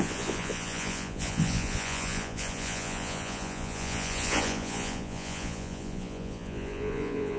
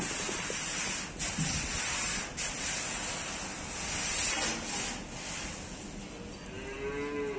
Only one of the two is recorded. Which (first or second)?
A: second